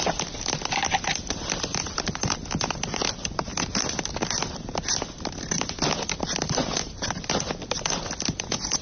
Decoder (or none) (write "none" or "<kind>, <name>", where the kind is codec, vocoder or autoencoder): none